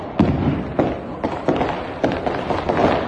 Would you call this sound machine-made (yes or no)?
no